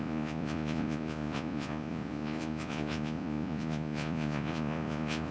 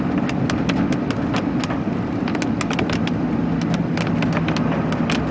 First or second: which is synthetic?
first